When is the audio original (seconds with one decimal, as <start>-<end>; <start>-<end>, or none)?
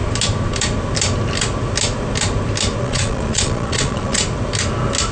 0.0-2.8; 4.2-5.1